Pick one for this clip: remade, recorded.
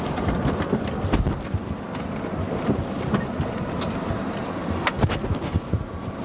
recorded